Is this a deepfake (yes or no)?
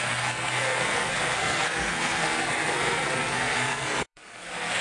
yes